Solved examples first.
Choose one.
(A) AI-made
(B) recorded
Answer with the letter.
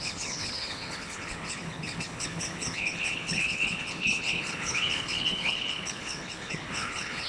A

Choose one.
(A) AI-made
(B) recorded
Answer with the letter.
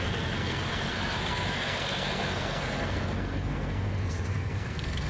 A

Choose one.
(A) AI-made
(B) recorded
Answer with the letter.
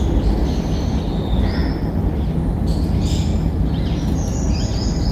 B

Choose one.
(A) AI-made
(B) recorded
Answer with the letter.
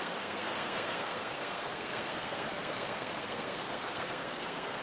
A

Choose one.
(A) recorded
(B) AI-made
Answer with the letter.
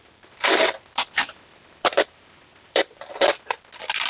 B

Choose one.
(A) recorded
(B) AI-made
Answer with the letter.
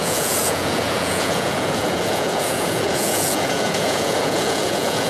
B